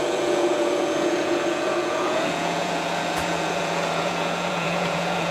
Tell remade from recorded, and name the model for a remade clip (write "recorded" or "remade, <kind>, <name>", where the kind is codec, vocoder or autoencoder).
remade, vocoder, Vocos